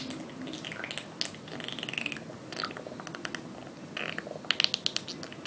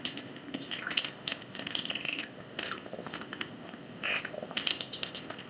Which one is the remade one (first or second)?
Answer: second